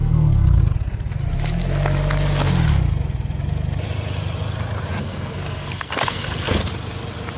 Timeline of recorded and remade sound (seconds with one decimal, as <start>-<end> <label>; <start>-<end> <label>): 0.0-0.6 remade; 0.6-5.0 recorded; 5.0-6.6 remade; 6.6-7.4 recorded